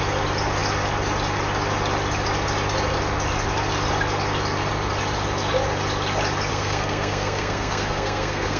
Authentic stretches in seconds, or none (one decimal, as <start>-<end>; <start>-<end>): 0.0-6.5